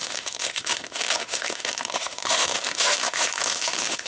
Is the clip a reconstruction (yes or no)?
yes